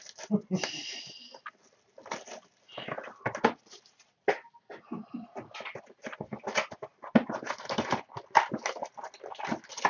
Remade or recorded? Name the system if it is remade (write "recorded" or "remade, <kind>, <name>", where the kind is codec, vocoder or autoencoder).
recorded